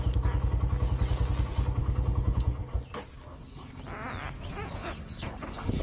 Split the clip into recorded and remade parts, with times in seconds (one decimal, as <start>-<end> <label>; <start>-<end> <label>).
0.0-1.8 recorded; 1.8-2.6 remade; 2.6-3.3 recorded; 3.3-3.8 remade; 3.8-4.8 recorded; 4.8-5.8 remade